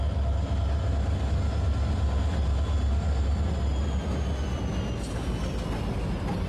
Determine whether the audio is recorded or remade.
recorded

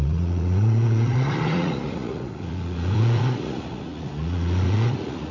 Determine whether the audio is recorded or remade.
remade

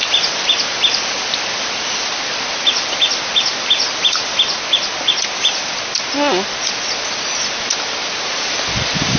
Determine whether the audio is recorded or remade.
recorded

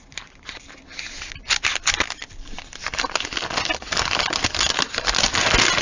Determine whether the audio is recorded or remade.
recorded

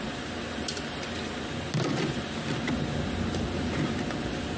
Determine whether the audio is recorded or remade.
recorded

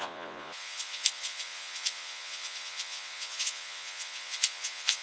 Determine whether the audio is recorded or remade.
remade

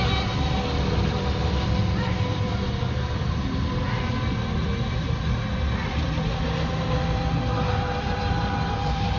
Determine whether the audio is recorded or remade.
recorded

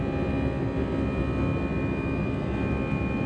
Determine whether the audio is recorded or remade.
recorded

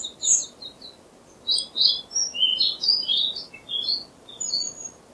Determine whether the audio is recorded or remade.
recorded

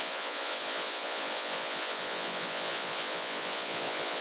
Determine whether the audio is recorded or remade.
remade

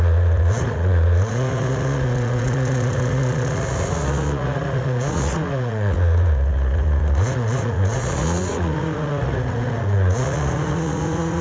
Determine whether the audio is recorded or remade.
remade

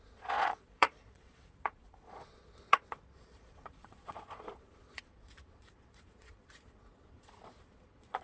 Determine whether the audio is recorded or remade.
remade